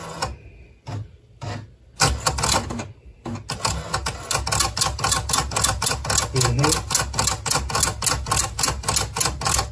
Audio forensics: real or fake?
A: real